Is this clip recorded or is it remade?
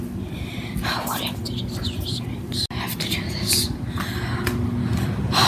recorded